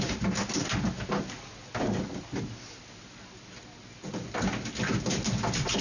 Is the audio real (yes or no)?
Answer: yes